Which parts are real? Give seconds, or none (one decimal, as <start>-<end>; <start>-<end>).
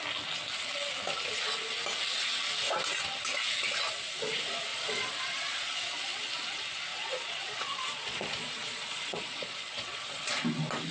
0.0-4.7; 5.8-6.9; 10.3-10.9